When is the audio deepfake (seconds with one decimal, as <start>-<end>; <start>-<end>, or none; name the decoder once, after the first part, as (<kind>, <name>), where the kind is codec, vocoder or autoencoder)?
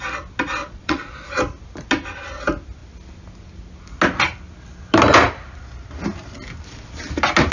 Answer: 0.6-1.3 (vocoder, Vocos)